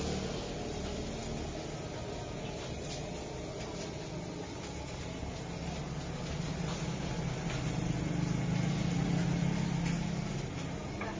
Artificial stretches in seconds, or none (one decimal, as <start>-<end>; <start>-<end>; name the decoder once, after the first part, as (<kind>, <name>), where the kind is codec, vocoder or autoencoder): none